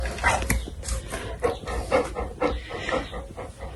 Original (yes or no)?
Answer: yes